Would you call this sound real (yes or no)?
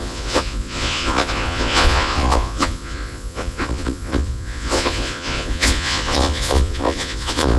no